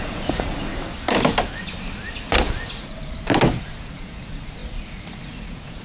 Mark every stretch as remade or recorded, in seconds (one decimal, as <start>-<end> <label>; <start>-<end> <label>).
0.0-0.7 remade; 0.7-3.6 recorded; 3.6-5.8 remade